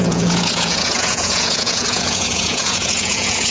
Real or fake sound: fake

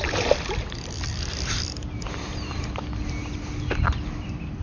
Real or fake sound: real